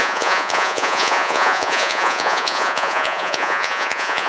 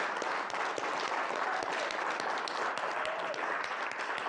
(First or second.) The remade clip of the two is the first